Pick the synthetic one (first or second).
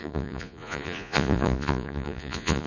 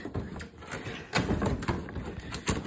first